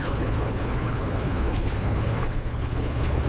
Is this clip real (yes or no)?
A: no